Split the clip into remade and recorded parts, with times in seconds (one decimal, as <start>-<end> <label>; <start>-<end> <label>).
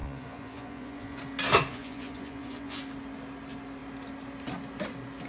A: 0.0-1.2 remade; 1.2-1.7 recorded; 1.7-2.8 remade; 2.8-5.3 recorded